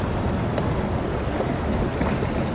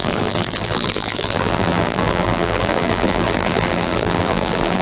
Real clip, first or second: first